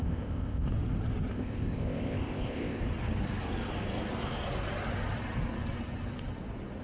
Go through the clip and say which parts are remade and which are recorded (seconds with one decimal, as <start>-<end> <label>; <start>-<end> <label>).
0.0-0.7 remade; 0.7-1.3 recorded; 1.3-2.8 remade; 2.8-6.8 recorded